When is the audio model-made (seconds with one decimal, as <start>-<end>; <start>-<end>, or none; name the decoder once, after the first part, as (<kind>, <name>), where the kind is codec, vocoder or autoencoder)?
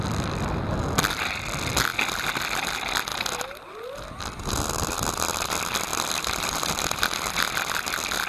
5.9-7.0 (vocoder, BigVGAN v2)